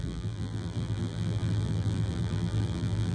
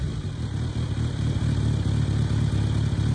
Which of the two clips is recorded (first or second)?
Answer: second